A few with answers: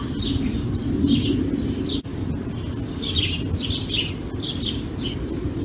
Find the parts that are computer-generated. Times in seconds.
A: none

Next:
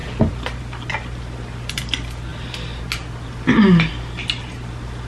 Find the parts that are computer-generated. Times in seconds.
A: none

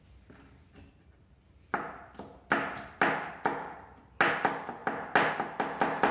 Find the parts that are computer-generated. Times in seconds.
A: none

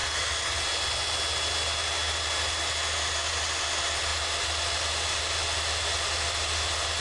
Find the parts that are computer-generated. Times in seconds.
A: none

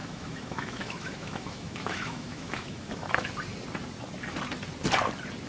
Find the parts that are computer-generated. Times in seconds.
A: 0.0-3.3

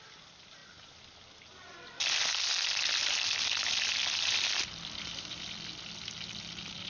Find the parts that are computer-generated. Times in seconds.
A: none

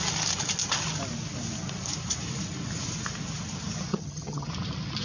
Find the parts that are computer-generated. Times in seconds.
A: 3.9-4.5